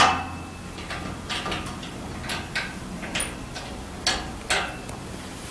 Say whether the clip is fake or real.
real